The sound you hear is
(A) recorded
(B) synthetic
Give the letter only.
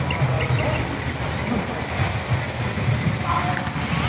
A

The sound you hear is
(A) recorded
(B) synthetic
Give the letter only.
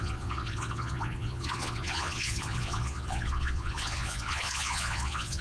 B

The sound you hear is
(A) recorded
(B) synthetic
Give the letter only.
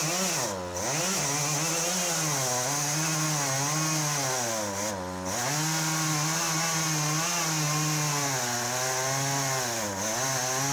A